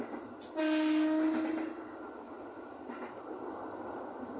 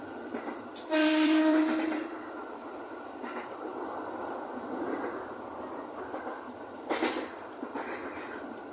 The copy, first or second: second